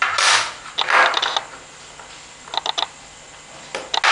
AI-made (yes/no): no